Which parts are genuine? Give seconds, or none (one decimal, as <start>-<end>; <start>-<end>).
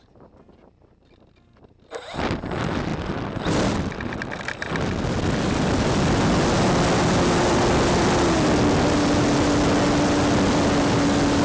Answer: 0.0-11.4